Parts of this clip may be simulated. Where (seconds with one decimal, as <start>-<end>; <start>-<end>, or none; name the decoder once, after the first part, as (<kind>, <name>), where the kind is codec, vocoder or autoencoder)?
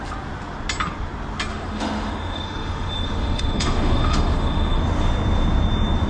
1.5-4.8 (autoencoder, DAC-VAE)